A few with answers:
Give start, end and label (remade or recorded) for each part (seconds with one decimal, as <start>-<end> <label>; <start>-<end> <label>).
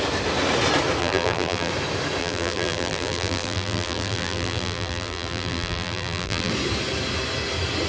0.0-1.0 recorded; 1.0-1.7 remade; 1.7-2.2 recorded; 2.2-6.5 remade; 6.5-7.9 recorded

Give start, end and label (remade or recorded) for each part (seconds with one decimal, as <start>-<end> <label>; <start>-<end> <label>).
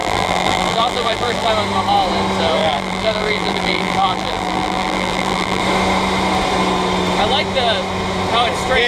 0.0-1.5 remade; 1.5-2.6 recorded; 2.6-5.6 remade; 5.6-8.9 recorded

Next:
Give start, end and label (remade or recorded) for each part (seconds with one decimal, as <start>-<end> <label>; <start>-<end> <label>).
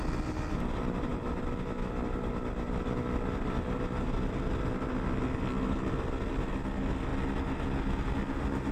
0.0-8.7 recorded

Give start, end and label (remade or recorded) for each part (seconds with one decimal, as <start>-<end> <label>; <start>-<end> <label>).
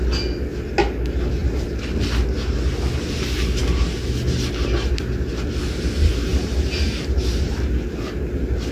0.0-6.3 recorded; 6.3-7.6 remade; 7.6-8.7 recorded